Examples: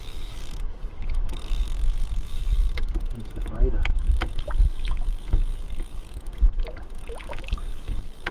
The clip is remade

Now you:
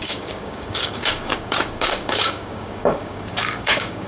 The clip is remade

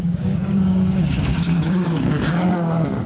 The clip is remade